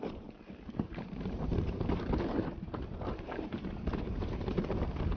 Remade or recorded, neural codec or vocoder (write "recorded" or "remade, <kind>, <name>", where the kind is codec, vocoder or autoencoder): remade, vocoder, BigVGAN v2